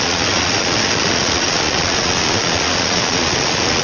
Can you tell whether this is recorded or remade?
remade